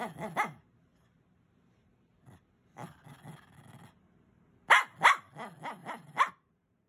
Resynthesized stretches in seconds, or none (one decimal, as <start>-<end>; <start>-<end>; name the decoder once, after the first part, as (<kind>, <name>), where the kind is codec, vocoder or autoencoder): 5.8-6.3 (vocoder, BigVGAN v2)